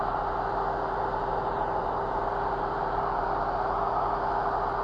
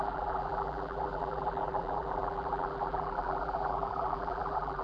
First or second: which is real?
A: first